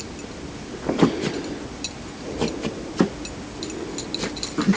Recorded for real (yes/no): yes